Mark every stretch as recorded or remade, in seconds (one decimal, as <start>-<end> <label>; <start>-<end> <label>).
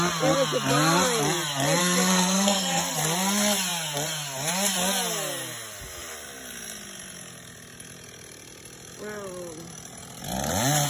0.0-1.8 recorded; 1.8-2.9 remade; 2.9-10.9 recorded